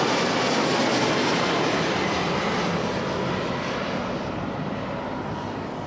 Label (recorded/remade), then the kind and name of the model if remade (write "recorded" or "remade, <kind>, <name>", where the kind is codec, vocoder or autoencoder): recorded